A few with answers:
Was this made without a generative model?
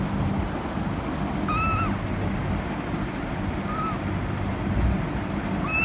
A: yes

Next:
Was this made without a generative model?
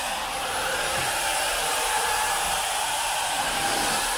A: no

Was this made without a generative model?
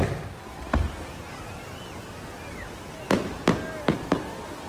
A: yes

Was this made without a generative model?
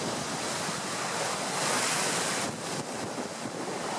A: yes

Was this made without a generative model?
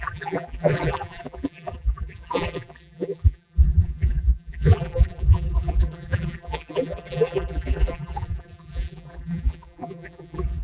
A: no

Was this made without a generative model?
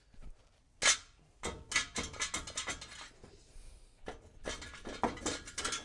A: yes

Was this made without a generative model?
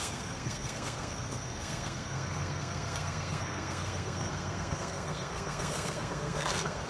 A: no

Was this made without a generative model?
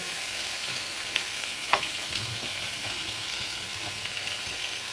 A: no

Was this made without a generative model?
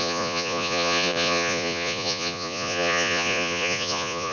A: no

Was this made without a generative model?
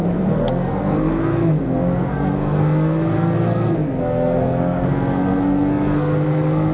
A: no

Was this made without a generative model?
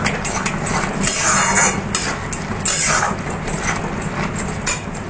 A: yes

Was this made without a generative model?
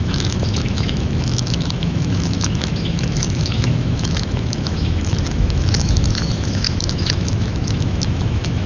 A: no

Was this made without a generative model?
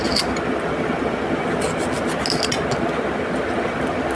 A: yes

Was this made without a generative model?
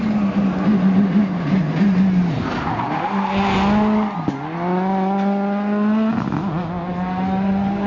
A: yes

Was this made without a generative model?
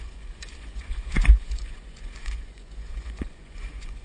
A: no